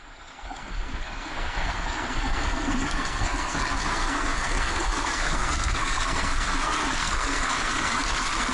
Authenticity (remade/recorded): remade